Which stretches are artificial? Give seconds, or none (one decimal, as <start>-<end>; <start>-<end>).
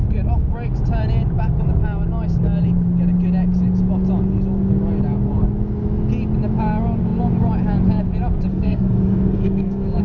8.5-10.0